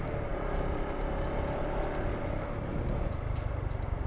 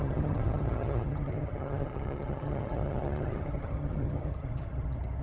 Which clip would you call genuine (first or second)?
first